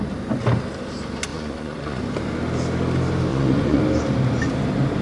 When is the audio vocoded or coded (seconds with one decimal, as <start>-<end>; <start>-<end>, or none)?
1.3-2.0; 3.3-3.8